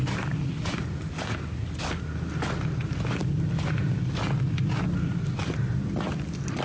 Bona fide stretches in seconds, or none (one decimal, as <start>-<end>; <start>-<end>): 0.0-6.6